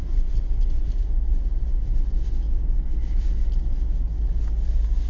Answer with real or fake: real